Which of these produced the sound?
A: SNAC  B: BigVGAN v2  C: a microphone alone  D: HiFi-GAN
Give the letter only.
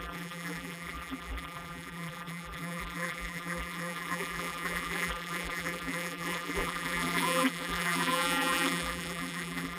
B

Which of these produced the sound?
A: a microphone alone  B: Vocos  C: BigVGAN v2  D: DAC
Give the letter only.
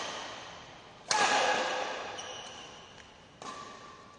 A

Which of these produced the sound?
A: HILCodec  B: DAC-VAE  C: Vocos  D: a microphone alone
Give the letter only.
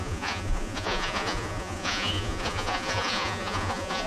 C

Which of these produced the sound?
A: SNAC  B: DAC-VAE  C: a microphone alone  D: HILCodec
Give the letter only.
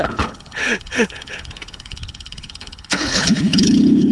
D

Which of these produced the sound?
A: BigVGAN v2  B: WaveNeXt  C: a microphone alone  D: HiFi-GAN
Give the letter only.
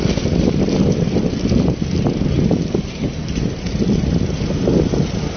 C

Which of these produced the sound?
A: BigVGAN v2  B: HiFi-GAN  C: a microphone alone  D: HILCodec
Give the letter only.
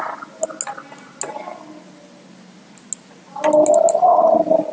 C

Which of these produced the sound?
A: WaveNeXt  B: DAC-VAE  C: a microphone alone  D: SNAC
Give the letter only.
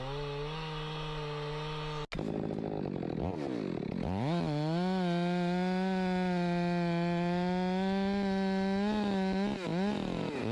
C